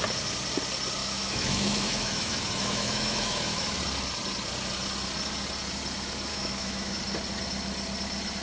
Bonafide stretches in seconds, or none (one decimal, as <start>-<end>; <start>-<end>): 0.0-1.0; 3.8-6.3; 7.0-8.4